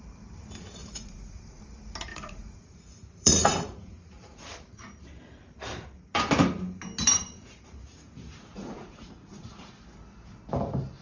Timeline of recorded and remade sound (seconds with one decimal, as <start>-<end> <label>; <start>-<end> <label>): 0.0-0.8 recorded; 0.8-1.6 remade; 1.6-2.1 recorded; 2.1-4.5 remade; 4.5-7.8 recorded; 7.8-9.7 remade; 9.7-11.0 recorded

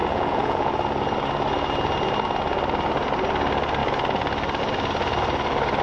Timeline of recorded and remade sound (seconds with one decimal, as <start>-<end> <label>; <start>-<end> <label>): 0.0-0.7 remade; 0.7-5.8 recorded